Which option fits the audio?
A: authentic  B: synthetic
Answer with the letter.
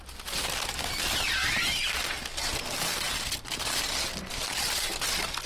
A